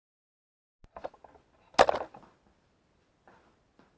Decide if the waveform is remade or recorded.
recorded